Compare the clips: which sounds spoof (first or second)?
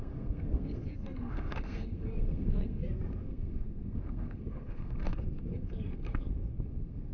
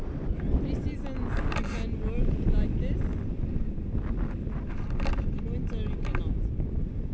first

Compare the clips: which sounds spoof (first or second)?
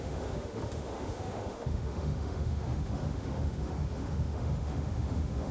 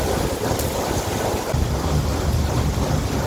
first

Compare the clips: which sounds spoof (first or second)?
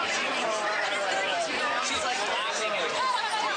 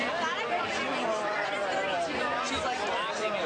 first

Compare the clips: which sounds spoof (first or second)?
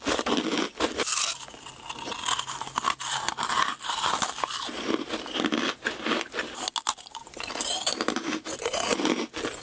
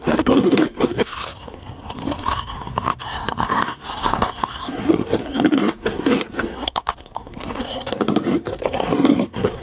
second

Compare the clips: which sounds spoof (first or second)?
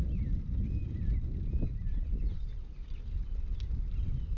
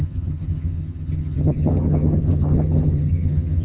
second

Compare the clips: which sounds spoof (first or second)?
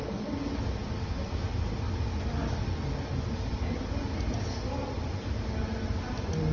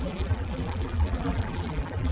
second